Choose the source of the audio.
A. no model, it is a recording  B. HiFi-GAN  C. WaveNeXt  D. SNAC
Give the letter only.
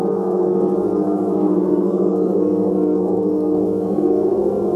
D